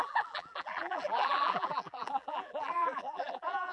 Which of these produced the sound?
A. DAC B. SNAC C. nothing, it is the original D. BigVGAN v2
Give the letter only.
D